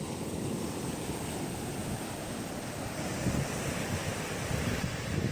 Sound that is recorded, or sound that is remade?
remade